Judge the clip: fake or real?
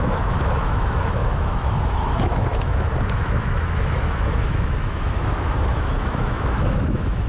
fake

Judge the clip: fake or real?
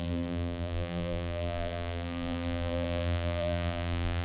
fake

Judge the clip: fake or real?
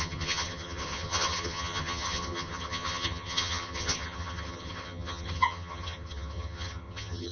fake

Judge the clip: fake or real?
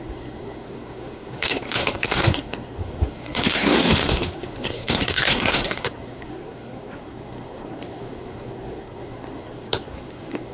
fake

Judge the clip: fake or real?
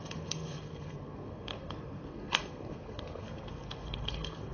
fake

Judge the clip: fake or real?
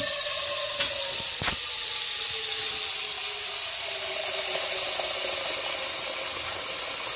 real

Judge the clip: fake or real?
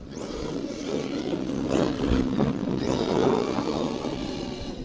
fake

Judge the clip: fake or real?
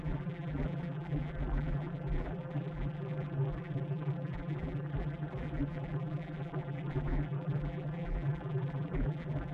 fake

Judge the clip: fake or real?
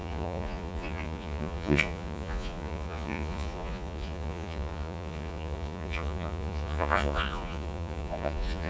fake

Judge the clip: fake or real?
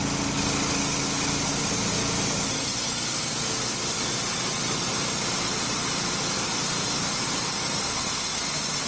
real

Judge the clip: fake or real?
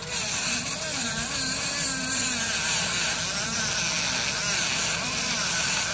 real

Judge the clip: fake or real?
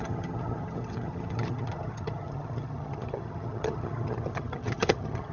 fake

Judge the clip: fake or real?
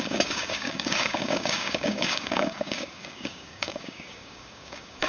fake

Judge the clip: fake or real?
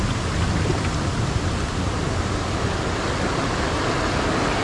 real